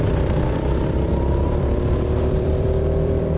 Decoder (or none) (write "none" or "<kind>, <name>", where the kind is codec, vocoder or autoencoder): vocoder, BigVGAN v2